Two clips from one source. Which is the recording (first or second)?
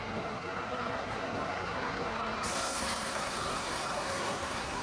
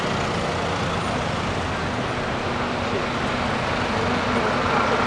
second